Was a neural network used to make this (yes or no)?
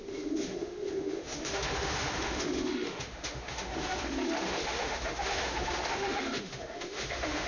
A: yes